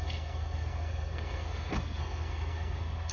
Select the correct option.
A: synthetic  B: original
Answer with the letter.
A